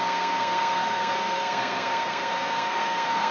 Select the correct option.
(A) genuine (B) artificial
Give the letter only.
B